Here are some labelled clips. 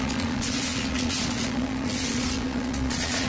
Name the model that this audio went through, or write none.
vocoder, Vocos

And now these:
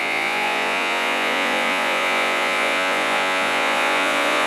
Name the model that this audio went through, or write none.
vocoder, Vocos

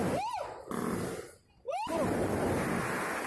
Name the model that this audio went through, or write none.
none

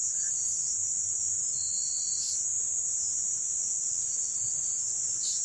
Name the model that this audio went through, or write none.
none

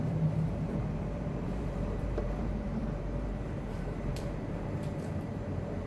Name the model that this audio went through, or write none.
vocoder, BigVGAN v2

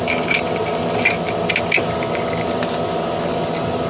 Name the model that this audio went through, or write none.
none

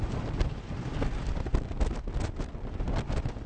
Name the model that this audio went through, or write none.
none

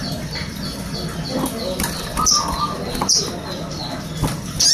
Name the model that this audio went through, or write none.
none